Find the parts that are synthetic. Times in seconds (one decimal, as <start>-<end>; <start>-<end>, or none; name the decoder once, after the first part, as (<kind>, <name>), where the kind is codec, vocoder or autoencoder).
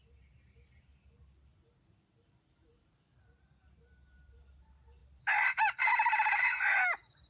5.0-6.4 (vocoder, BigVGAN v2)